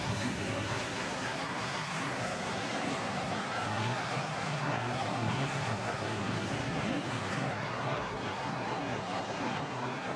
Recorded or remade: remade